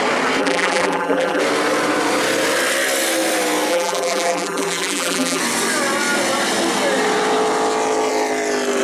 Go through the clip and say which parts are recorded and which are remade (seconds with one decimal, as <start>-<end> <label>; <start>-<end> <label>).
0.0-0.4 recorded; 0.4-1.4 remade; 1.4-3.7 recorded; 3.7-5.4 remade; 5.4-8.8 recorded